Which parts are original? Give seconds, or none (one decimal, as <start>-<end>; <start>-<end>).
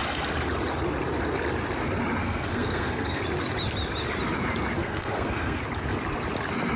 0.0-2.2; 3.2-4.8; 5.6-6.8